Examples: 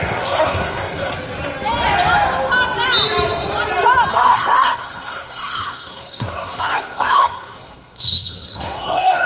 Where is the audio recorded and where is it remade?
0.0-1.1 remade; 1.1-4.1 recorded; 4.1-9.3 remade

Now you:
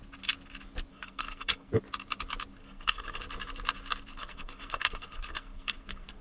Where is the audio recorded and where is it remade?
0.0-0.9 recorded; 0.9-1.7 remade; 1.7-2.6 recorded; 2.6-3.2 remade; 3.2-4.2 recorded; 4.2-6.2 remade

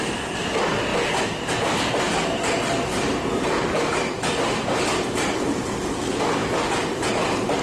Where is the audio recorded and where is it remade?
0.0-7.6 recorded